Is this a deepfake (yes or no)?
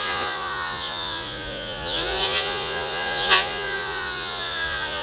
yes